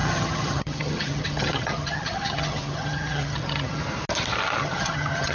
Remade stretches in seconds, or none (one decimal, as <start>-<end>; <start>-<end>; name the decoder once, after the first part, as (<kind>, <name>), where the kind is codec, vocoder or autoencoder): 0.0-3.8 (vocoder, HiFi-GAN); 4.6-5.3